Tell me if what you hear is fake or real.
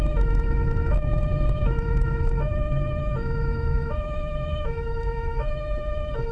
fake